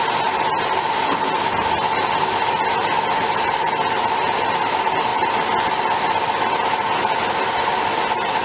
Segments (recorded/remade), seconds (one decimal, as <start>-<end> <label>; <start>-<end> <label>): 0.0-8.4 recorded